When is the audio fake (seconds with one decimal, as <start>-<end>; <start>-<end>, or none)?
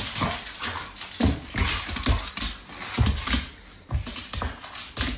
none